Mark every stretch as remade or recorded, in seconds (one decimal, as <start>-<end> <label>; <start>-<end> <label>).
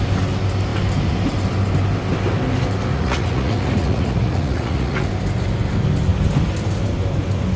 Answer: 0.0-2.9 recorded; 2.9-5.1 remade; 5.1-7.6 recorded